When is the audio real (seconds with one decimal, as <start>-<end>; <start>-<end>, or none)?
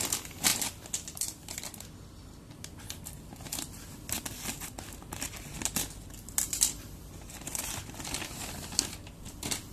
0.0-9.7